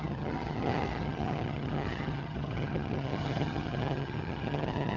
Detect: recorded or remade remade